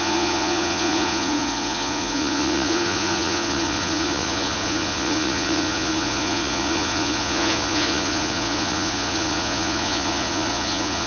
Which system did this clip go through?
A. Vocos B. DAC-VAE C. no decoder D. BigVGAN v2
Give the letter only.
A